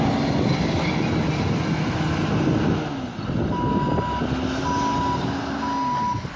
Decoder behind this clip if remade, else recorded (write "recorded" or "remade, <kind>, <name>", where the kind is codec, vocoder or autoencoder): recorded